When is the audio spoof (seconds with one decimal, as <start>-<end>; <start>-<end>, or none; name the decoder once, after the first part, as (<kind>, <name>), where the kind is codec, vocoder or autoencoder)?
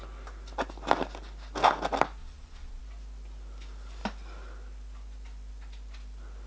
2.2-2.8 (vocoder, Vocos)